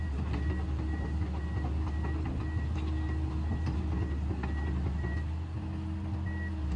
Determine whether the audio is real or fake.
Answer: real